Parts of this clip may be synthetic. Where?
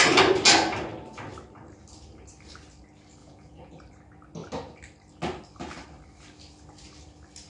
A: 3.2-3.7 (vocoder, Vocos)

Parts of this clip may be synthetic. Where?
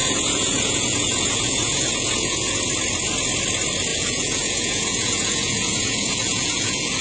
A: 0.0-2.6 (vocoder, Vocos); 3.9-7.0